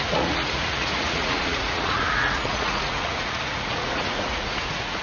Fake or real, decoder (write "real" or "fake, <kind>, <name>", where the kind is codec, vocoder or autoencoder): fake, vocoder, Vocos